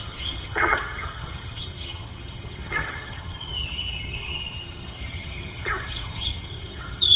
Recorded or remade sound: remade